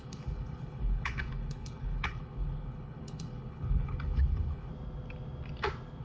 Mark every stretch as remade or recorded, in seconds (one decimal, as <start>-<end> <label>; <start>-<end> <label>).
0.0-4.7 remade; 4.7-6.0 recorded